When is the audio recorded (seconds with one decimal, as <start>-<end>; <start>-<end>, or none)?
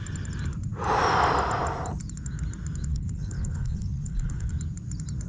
0.0-2.9; 4.5-5.3